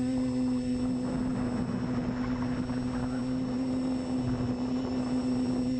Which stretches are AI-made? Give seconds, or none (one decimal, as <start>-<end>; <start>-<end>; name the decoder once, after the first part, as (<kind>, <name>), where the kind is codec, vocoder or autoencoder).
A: none